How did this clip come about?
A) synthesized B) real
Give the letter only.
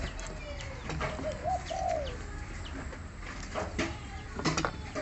B